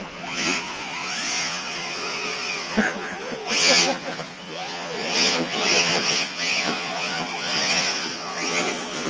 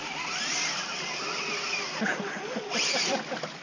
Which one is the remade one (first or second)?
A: first